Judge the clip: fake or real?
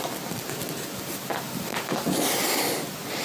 real